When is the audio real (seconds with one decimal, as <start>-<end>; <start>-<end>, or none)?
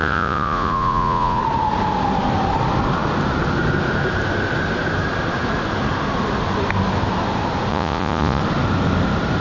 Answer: 1.4-7.7; 8.4-9.4